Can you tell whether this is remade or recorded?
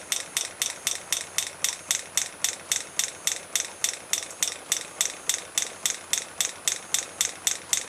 recorded